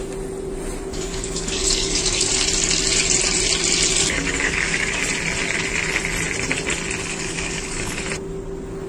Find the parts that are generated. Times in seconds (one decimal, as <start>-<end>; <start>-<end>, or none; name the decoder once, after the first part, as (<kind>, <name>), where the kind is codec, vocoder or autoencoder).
0.9-2.3 (codec, DAC); 4.0-5.0; 7.1-8.0